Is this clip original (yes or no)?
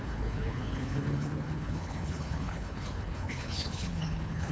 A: no